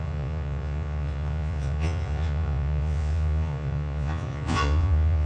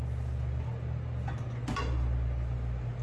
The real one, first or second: second